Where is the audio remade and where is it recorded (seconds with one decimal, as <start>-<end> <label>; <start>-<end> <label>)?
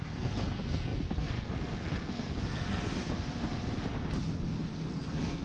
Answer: 0.0-3.0 remade; 3.0-4.9 recorded; 4.9-5.4 remade